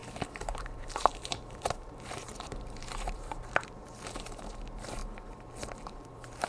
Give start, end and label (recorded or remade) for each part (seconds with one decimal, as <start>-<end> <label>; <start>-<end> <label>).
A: 0.0-5.0 remade; 5.0-5.7 recorded; 5.7-6.5 remade